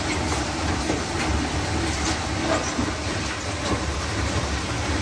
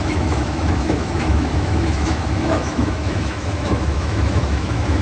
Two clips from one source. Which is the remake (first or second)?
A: second